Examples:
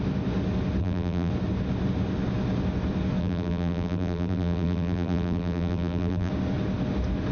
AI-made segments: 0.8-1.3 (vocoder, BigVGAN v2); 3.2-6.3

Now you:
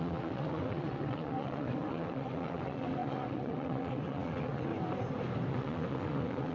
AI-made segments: 0.0-4.7 (vocoder, WaveNeXt); 5.5-6.5

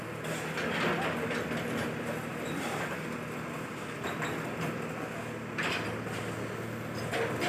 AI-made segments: none

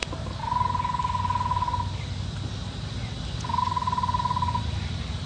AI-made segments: none

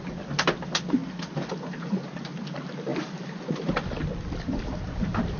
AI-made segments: none

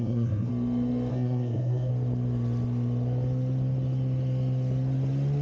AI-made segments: 0.0-0.5 (codec, SNAC); 1.1-1.9

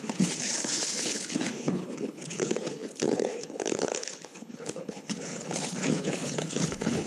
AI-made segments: 0.0-7.1 (codec, HILCodec)